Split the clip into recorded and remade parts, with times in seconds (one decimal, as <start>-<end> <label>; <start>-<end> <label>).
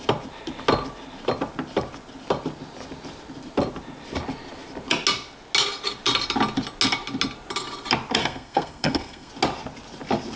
0.0-8.2 recorded; 8.2-9.3 remade; 9.3-10.4 recorded